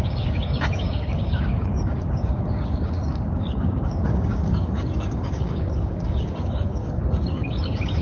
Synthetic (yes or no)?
yes